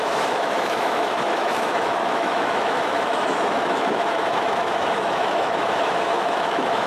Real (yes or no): no